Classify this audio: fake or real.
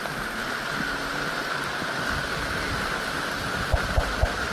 real